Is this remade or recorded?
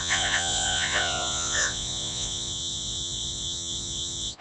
remade